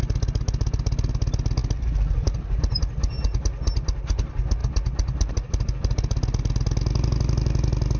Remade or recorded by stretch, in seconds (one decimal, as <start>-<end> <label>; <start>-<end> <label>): 0.0-8.0 recorded